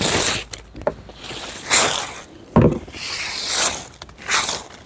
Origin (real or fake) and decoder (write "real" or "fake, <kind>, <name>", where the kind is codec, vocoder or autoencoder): real